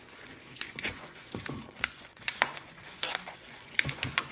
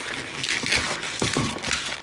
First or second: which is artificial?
first